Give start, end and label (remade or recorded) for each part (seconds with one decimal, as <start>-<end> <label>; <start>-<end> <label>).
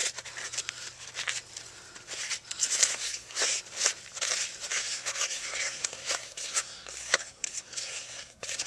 0.0-2.9 recorded; 2.9-3.6 remade; 3.6-4.7 recorded; 4.7-8.7 remade